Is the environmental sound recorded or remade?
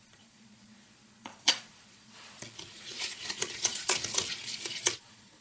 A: remade